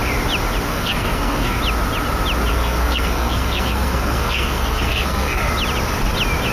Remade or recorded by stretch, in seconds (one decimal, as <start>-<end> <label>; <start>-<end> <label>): 0.0-0.7 recorded; 0.7-1.6 remade; 1.6-2.5 recorded; 2.5-5.5 remade; 5.5-6.5 recorded